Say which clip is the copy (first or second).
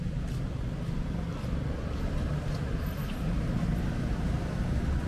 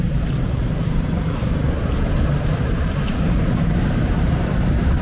second